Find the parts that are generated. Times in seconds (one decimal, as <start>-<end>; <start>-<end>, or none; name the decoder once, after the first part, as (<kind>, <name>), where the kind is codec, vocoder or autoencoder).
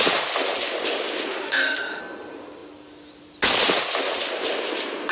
1.3-2.0 (autoencoder, DAC-VAE)